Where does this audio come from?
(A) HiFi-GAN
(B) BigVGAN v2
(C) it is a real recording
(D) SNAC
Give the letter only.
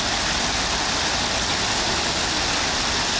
C